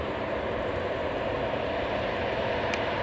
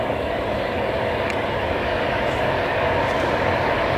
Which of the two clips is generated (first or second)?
second